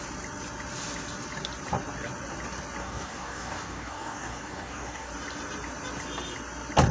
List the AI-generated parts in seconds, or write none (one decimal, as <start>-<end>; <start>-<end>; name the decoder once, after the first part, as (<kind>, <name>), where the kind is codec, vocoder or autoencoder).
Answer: 2.8-5.1 (codec, DAC)